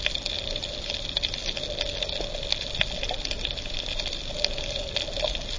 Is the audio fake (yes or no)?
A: no